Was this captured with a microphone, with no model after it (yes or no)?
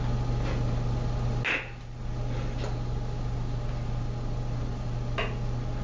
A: yes